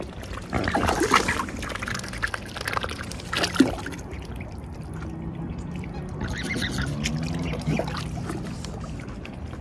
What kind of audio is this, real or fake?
real